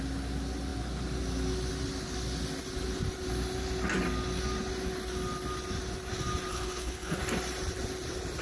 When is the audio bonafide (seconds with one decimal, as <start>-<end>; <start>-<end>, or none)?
0.0-6.5; 7.2-8.4